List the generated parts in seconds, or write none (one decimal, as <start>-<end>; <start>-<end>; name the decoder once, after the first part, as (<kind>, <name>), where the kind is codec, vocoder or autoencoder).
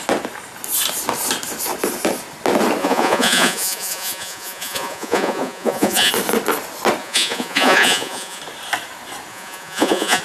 2.8-6.1 (vocoder, Vocos); 7.0-8.4; 9.3-10.2